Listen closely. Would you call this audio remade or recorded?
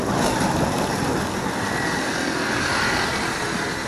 recorded